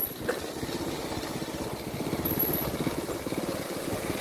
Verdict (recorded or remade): recorded